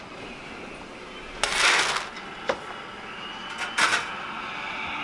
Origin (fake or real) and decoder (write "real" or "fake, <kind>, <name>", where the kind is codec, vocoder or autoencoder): real